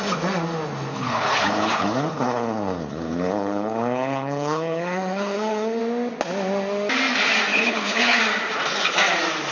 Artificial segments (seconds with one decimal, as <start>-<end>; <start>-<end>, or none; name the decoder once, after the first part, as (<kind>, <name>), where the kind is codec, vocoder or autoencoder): 0.9-5.8 (codec, HILCodec); 7.5-8.2